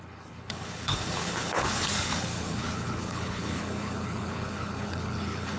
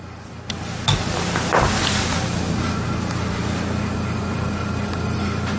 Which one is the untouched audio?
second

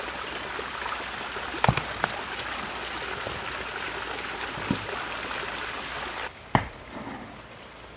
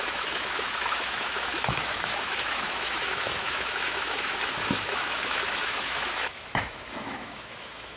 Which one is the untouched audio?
first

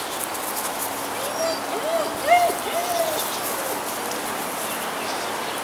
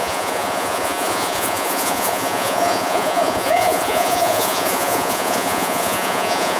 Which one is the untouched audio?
first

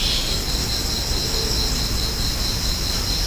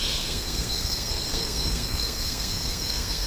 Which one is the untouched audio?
first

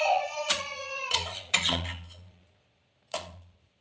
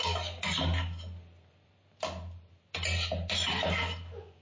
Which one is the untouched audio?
second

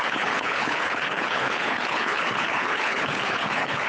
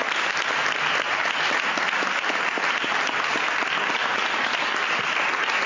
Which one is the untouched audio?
second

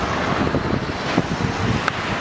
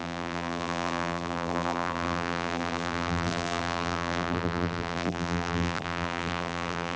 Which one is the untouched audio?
first